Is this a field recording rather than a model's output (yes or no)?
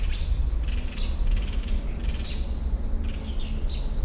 yes